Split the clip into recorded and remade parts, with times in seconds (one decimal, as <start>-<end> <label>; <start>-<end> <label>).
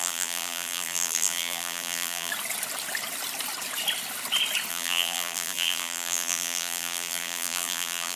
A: 0.0-2.3 remade; 2.3-4.7 recorded; 4.7-8.2 remade